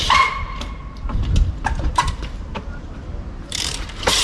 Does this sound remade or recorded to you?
remade